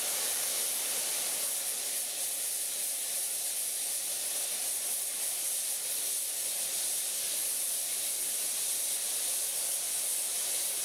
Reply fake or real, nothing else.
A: real